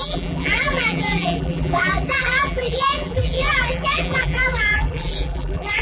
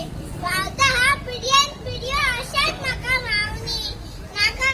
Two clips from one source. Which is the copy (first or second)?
first